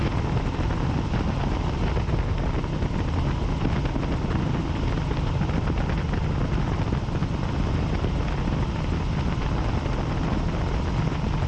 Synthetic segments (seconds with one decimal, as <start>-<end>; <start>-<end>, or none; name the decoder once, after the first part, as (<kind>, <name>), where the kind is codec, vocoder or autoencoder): none